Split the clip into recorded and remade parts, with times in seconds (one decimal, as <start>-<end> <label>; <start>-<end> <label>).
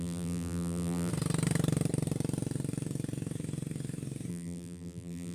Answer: 0.0-1.1 remade; 1.1-4.3 recorded; 4.3-5.3 remade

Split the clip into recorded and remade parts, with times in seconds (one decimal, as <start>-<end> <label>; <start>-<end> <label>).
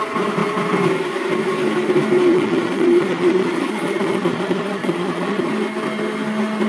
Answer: 0.0-2.3 recorded; 2.3-5.5 remade; 5.5-6.7 recorded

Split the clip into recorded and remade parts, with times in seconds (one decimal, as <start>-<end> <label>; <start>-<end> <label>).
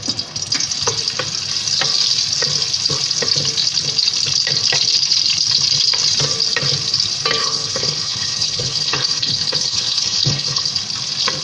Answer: 0.0-7.4 recorded; 7.4-10.7 remade; 10.7-11.4 recorded